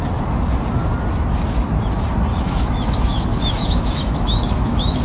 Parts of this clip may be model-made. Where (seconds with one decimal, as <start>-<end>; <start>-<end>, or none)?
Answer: 2.3-5.0